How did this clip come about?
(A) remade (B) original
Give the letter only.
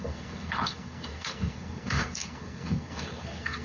A